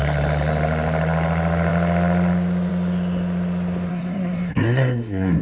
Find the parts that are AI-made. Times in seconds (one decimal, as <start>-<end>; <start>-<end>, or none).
3.9-5.4